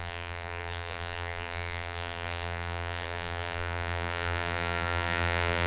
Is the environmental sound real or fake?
fake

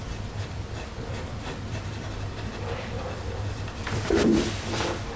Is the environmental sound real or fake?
fake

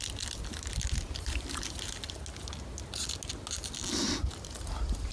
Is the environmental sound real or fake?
real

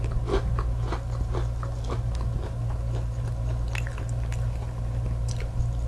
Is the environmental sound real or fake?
real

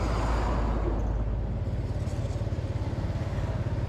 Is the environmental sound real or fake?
real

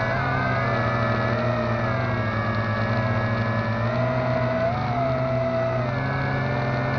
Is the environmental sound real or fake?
real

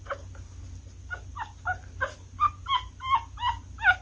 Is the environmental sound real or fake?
real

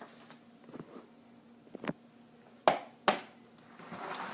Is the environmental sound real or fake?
real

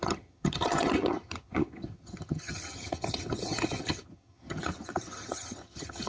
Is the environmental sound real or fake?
fake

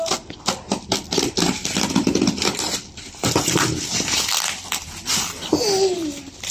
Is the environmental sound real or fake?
fake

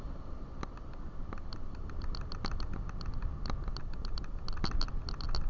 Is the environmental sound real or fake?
real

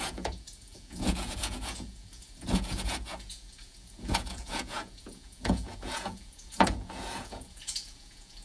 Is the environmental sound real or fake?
fake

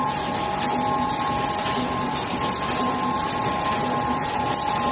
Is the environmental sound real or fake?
real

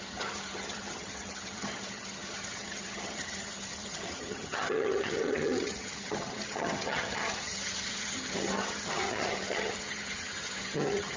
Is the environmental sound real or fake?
fake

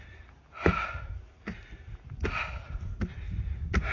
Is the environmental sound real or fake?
real